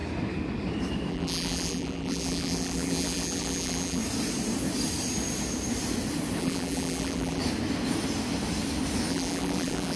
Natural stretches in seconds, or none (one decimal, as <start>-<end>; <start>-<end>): 0.0-1.1; 4.0-6.4; 7.4-9.1